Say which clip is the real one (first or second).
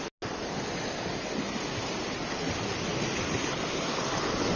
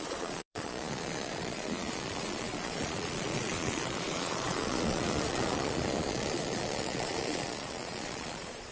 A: first